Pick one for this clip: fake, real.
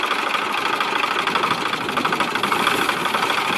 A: real